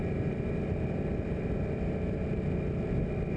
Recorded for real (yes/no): yes